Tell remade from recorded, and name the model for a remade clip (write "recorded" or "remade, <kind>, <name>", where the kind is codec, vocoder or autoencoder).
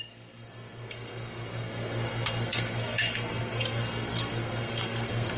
remade, codec, SNAC